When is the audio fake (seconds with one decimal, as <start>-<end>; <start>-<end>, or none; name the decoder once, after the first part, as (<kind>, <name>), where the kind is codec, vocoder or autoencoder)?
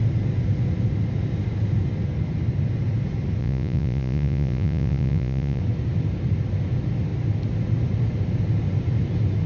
3.4-5.6 (vocoder, Vocos)